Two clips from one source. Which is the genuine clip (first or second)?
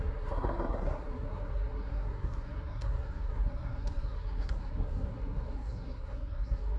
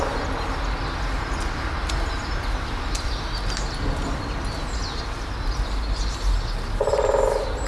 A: second